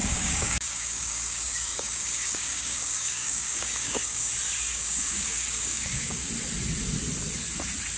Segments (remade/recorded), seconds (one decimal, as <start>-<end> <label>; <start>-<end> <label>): 0.0-4.3 remade; 4.3-4.7 recorded; 4.7-6.3 remade; 6.3-8.0 recorded